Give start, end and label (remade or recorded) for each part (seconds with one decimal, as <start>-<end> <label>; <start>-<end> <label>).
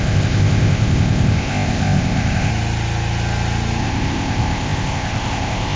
0.0-2.5 remade; 2.5-3.8 recorded; 3.8-5.8 remade